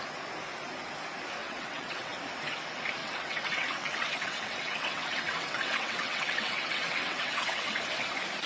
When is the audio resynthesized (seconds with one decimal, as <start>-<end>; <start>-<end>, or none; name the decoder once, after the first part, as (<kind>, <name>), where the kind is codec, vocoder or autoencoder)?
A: 1.4-2.2 (vocoder, WaveNeXt); 3.0-7.8